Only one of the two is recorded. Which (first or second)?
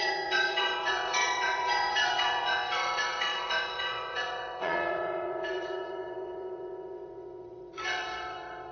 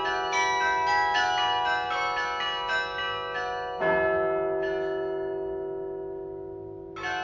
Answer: second